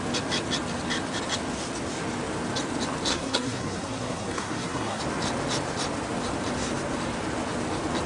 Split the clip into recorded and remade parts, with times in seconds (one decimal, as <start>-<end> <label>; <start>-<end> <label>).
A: 0.0-3.1 recorded; 3.1-5.0 remade; 5.0-8.1 recorded